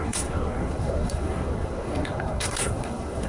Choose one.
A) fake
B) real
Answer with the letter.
A